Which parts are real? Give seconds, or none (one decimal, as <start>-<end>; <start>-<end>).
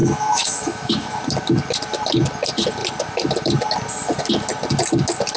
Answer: 1.2-5.4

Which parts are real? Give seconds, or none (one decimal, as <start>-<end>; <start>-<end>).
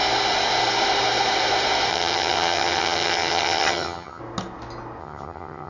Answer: 0.0-1.9; 4.2-5.0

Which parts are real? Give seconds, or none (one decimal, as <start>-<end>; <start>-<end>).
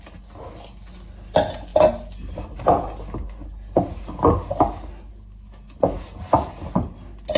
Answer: 0.0-7.4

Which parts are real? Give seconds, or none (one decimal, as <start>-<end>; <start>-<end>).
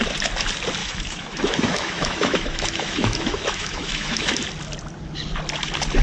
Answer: 0.0-0.8; 4.4-6.0